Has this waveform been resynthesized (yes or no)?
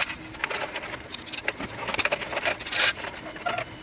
no